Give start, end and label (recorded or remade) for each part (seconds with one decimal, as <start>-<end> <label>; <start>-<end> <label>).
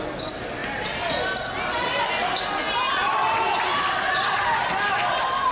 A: 0.0-5.5 recorded